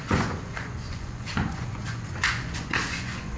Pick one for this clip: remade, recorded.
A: remade